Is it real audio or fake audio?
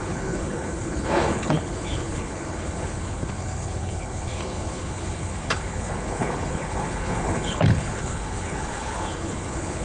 fake